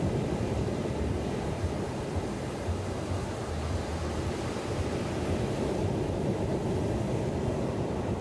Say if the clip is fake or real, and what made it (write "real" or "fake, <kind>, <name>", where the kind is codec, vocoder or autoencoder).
fake, vocoder, BigVGAN v2